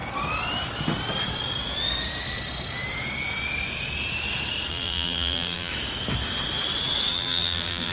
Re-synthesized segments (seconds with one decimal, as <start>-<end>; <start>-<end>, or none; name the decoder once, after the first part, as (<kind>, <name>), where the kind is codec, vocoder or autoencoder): 4.7-5.7 (vocoder, BigVGAN v2); 7.1-7.9